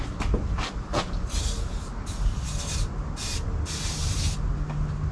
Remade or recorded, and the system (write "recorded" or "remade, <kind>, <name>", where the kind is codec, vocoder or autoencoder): recorded